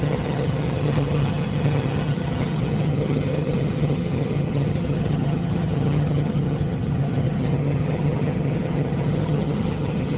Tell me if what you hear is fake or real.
fake